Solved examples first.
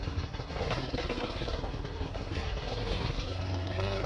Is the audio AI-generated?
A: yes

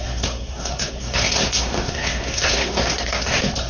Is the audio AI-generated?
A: yes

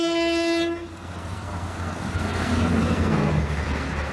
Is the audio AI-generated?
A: yes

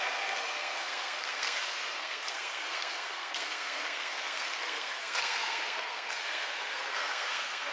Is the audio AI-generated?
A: yes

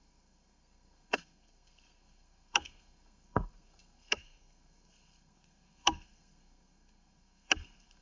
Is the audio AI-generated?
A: yes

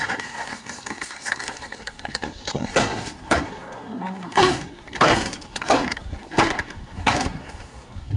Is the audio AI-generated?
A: yes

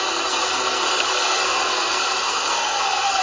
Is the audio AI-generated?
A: yes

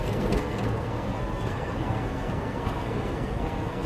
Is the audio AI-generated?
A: yes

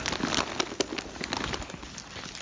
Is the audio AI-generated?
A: no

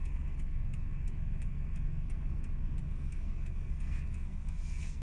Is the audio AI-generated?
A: yes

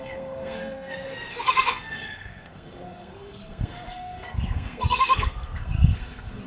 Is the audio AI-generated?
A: yes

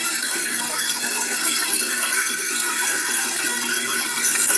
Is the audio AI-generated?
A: yes